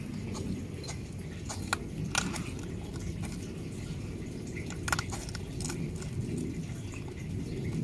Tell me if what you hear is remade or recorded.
recorded